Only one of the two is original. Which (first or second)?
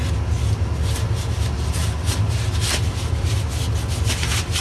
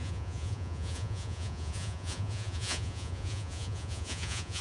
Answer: first